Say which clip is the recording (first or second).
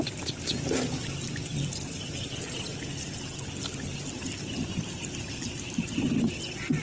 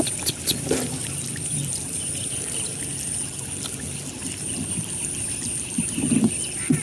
first